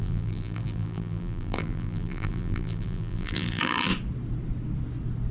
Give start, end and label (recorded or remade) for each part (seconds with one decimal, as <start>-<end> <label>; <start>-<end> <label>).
0.0-3.9 remade; 3.9-5.3 recorded